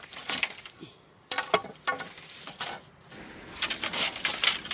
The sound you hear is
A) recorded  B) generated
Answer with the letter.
A